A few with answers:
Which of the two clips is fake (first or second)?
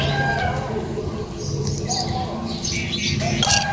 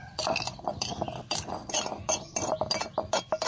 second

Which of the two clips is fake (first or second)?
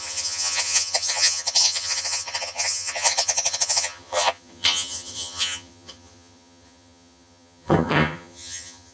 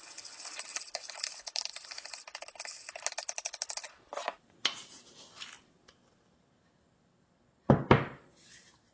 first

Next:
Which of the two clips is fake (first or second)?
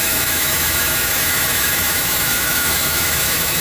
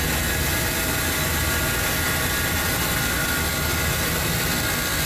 first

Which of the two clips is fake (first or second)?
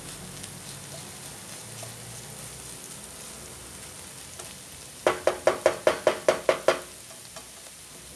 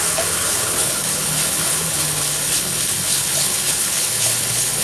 second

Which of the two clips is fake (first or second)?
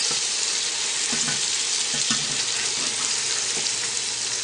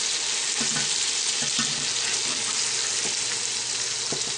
first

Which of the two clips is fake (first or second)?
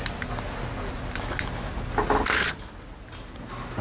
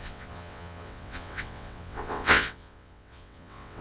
second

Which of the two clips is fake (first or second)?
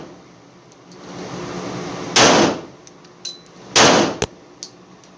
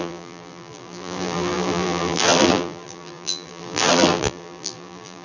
second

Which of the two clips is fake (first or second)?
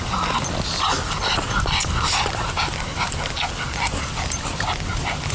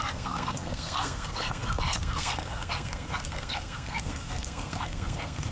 second